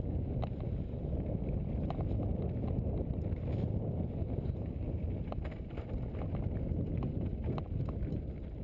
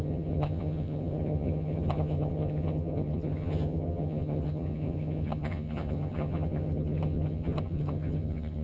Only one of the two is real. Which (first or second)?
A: first